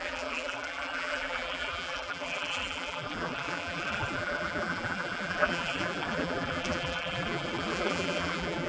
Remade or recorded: remade